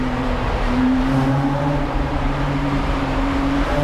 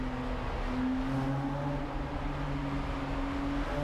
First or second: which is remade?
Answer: first